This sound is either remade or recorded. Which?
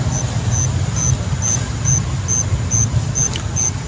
recorded